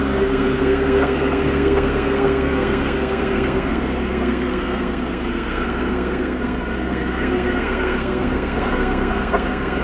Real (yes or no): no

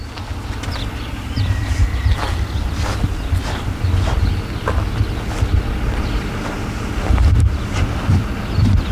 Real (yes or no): yes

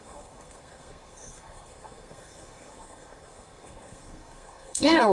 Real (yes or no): no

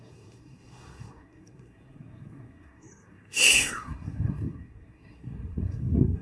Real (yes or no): no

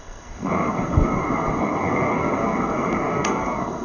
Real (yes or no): no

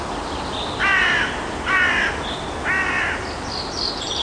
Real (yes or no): yes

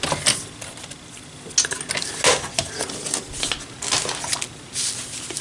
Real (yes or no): yes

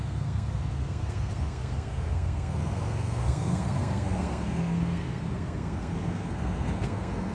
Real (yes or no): no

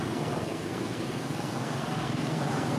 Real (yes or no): no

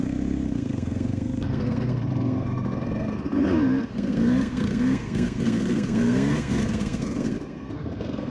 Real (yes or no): no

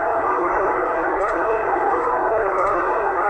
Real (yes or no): no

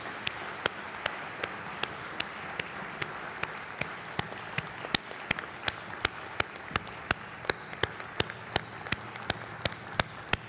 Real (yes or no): yes